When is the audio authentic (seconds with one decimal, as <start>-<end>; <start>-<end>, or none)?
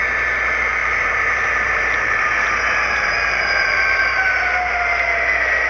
0.0-0.8; 4.2-5.7